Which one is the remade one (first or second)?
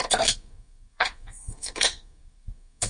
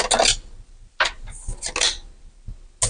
first